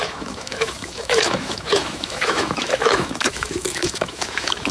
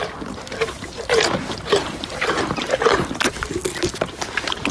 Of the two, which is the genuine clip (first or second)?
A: second